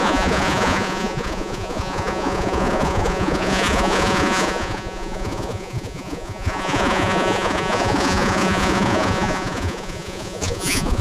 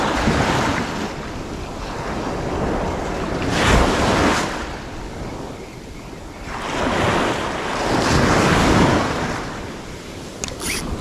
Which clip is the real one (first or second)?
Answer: second